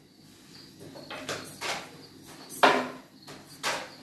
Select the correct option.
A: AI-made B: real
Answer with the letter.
B